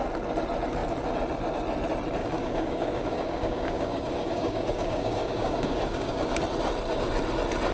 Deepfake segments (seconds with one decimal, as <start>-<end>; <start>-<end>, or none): 2.2-6.4

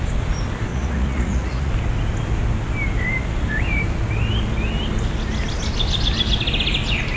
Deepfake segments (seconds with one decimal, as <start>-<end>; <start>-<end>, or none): 0.7-1.7

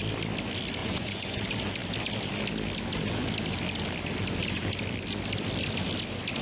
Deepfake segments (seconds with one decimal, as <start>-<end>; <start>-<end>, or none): 0.8-1.4

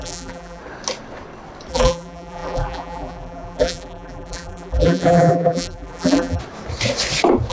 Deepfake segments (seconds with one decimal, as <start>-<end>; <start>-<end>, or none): 0.0-0.6; 1.7-6.4

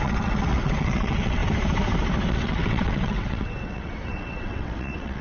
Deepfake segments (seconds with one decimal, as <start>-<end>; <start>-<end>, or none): 0.0-1.4; 2.3-5.2

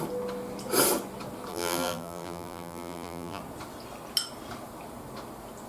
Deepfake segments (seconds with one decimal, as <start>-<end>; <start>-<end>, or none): 1.5-3.4